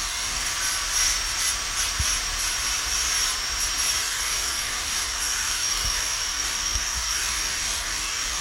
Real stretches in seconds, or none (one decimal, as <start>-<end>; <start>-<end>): 0.5-4.0